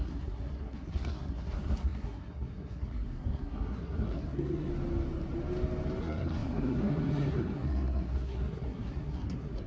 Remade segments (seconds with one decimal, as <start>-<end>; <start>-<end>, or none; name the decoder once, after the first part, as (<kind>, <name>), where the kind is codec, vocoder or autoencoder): 0.0-4.7 (codec, SNAC); 6.0-9.7